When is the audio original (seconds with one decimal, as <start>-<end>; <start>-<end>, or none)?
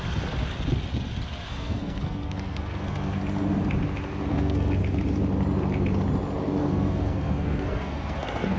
0.0-1.5; 3.2-4.3; 4.8-6.6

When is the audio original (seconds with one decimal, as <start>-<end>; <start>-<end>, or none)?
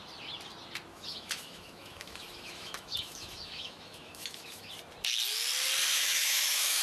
0.0-0.9; 4.7-5.9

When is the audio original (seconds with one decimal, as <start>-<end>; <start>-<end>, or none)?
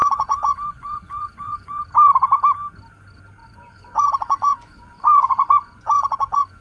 1.8-3.4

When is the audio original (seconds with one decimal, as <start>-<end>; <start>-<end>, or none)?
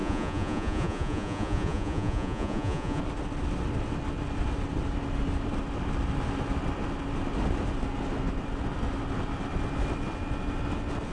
3.0-11.1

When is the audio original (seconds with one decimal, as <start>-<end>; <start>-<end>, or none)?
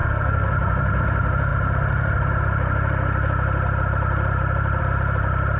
0.5-5.6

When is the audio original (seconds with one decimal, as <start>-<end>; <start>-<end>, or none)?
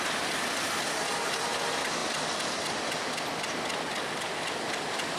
0.0-5.2